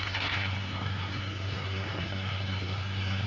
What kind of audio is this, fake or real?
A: fake